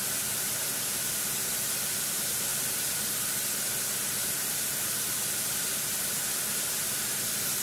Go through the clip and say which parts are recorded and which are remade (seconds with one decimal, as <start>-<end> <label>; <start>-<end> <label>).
0.0-7.6 recorded